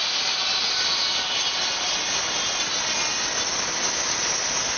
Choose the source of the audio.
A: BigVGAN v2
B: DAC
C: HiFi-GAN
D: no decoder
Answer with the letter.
D